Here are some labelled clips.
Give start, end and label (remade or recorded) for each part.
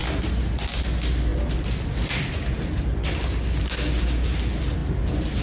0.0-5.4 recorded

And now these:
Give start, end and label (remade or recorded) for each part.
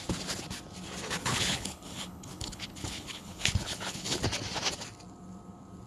0.0-1.2 recorded; 1.2-4.2 remade; 4.2-5.9 recorded